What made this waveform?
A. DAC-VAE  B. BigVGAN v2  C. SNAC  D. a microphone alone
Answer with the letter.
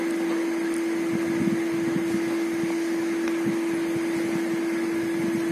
D